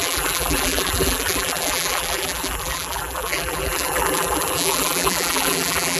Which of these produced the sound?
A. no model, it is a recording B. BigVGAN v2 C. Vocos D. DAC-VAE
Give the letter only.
B